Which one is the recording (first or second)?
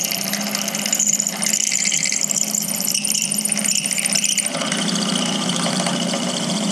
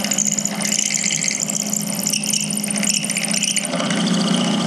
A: second